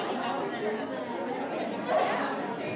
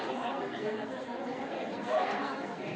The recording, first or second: first